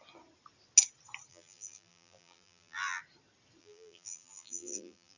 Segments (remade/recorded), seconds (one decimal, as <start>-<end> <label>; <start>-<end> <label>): 0.0-1.3 recorded; 1.3-3.0 remade; 3.0-3.6 recorded; 3.6-5.2 remade